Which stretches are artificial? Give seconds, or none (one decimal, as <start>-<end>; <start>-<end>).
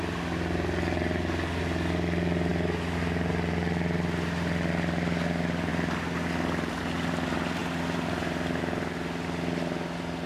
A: none